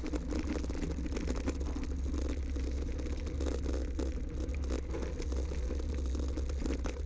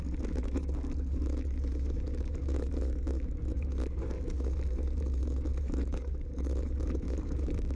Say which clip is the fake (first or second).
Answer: second